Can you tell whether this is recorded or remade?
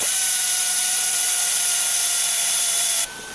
remade